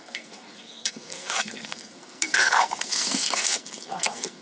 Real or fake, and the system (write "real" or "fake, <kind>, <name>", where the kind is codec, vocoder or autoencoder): fake, codec, SNAC